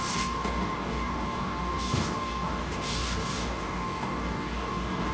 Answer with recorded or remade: remade